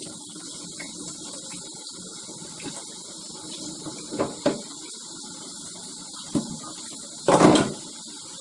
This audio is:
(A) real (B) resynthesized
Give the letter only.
A